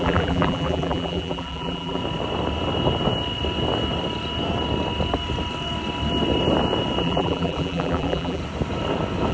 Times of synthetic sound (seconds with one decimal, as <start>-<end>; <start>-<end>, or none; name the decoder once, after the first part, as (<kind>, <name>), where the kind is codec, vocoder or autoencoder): 0.0-2.0 (vocoder, BigVGAN v2); 7.0-8.4